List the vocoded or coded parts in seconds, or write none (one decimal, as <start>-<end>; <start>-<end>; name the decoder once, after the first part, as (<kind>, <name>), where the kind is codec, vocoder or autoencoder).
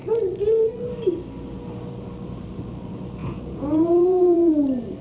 3.2-4.5 (vocoder, Vocos)